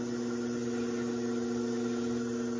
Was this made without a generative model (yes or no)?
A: yes